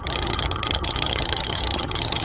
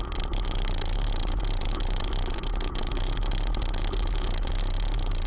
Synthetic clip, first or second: first